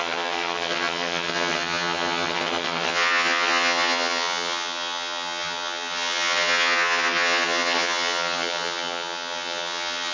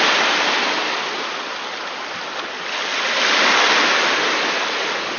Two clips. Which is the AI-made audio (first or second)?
first